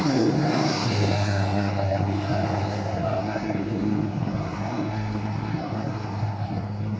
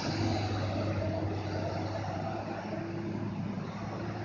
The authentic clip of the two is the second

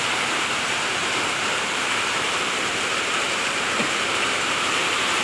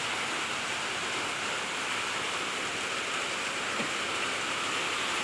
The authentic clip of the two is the second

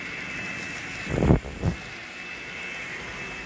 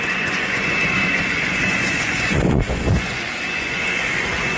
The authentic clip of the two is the first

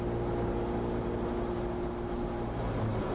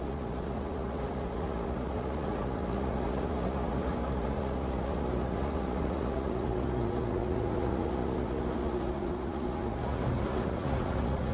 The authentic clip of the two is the first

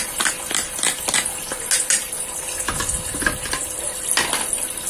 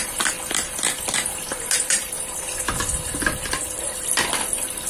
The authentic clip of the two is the first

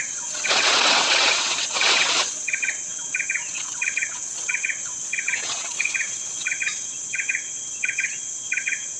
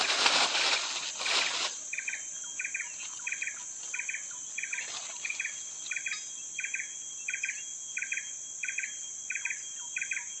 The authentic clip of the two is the second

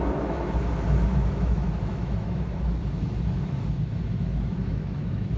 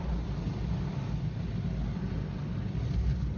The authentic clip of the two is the second